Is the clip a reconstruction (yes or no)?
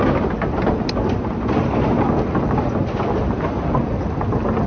no